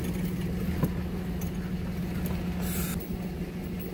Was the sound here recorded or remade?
recorded